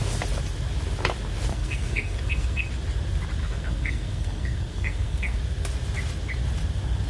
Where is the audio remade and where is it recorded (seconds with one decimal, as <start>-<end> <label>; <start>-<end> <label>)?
0.0-1.5 recorded; 1.5-2.7 remade; 2.7-3.4 recorded; 3.4-5.4 remade; 5.4-7.1 recorded